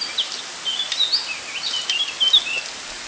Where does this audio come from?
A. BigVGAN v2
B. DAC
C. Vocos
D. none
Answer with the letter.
D